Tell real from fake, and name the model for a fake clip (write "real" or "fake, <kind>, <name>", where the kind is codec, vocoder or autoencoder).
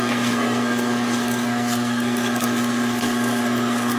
fake, codec, SNAC